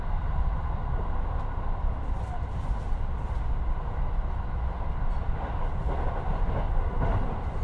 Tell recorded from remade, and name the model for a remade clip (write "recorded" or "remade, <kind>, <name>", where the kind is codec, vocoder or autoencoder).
recorded